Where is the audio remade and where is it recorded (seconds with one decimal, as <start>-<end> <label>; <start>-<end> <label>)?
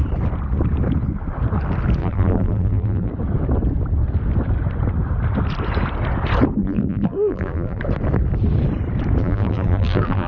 0.0-2.0 recorded; 2.0-3.1 remade; 3.1-6.6 recorded; 6.6-7.8 remade; 7.8-9.2 recorded; 9.2-10.3 remade